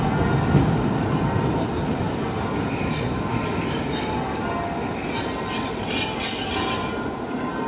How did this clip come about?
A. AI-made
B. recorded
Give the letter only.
B